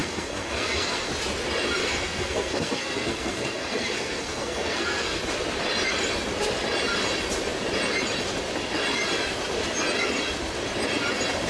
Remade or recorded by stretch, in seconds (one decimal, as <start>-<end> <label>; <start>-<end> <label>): 0.0-1.1 remade; 1.1-1.8 recorded; 1.8-5.2 remade; 5.2-11.5 recorded